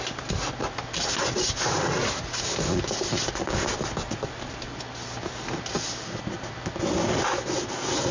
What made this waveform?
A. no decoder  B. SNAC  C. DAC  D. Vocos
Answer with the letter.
A